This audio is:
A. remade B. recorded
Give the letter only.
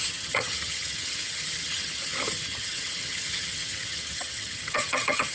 A